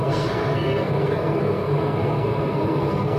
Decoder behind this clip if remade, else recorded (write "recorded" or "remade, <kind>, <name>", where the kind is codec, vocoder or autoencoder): remade, codec, SNAC